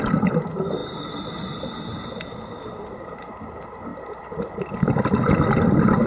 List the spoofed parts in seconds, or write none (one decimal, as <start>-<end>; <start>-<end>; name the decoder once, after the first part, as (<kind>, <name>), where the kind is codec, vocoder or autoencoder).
none